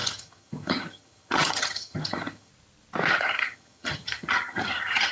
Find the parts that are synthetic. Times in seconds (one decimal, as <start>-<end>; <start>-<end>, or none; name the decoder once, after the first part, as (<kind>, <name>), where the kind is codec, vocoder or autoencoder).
0.0-2.5 (vocoder, HiFi-GAN); 3.1-5.1